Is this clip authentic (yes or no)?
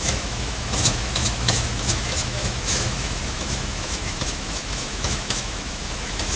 no